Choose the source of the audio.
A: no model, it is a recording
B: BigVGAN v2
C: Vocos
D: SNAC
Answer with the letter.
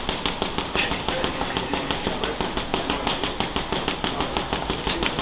A